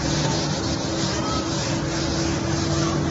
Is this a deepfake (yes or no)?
no